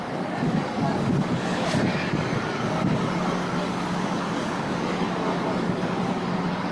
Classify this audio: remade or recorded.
remade